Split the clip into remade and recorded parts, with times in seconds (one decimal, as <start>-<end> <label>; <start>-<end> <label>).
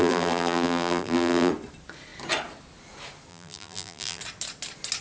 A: 0.0-1.5 remade; 1.5-3.3 recorded; 3.3-4.2 remade; 4.2-5.0 recorded